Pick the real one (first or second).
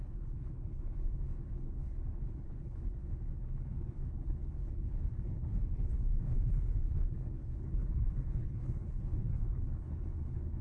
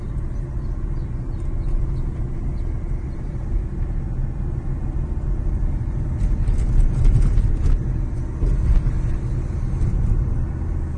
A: second